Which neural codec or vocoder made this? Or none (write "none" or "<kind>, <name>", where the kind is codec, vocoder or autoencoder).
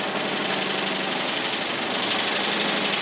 none